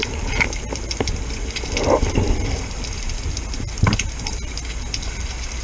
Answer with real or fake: real